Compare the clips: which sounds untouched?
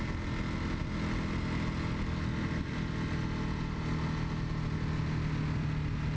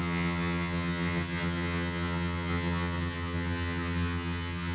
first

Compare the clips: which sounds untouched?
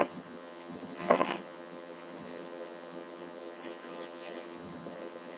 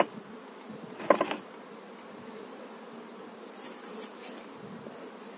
second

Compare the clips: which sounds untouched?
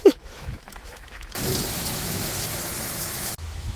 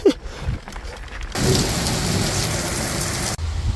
second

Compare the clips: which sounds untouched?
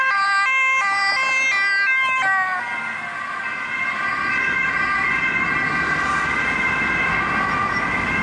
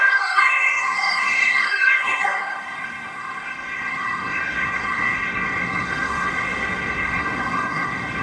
first